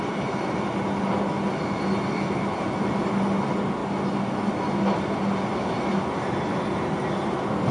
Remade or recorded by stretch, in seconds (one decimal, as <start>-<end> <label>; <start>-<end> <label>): 0.0-7.7 recorded